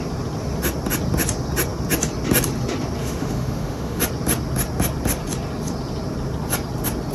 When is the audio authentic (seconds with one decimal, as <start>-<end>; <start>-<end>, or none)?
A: 0.0-3.0; 4.0-7.1